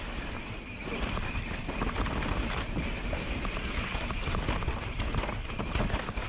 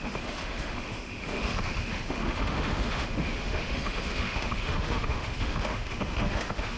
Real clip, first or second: first